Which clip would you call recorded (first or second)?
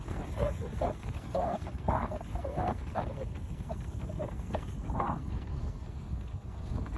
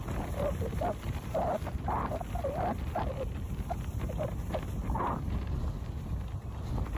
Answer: second